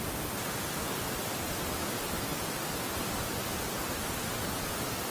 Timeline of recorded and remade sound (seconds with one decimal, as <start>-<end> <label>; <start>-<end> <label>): 0.0-5.1 recorded